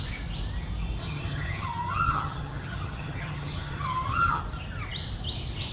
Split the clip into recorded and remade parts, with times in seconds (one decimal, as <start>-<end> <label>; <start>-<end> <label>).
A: 0.0-1.0 recorded; 1.0-4.4 remade; 4.4-5.7 recorded